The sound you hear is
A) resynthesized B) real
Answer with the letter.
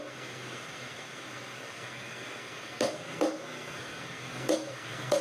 A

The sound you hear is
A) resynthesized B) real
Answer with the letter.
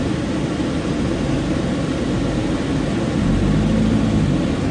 B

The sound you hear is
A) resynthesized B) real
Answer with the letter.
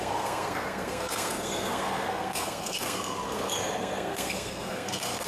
A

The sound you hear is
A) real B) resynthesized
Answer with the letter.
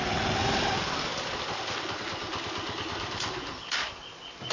A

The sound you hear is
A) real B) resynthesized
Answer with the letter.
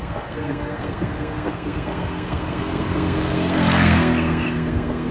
B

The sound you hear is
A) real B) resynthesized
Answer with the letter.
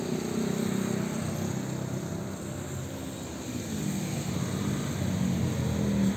A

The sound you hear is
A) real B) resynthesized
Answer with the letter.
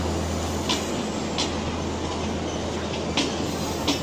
A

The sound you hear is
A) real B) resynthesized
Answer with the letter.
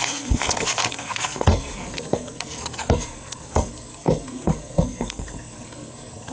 B